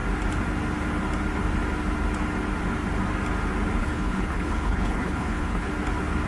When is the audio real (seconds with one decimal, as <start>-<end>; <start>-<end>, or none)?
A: 0.0-3.8; 5.7-6.3